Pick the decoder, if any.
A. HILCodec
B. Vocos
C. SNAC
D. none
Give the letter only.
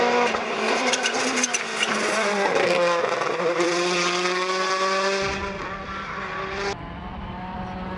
D